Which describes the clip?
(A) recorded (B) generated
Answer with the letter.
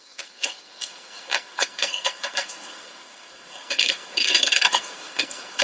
B